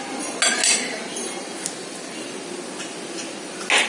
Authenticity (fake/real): real